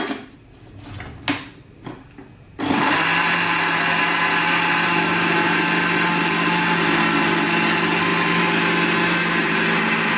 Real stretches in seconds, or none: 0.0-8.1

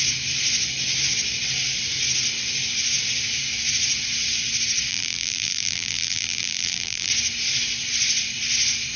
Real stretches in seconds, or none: 0.0-4.9; 7.1-9.0

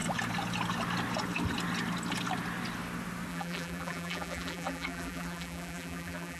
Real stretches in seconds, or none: 0.0-3.3

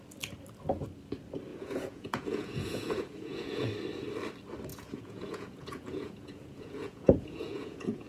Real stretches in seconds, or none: 0.0-1.5; 3.7-4.7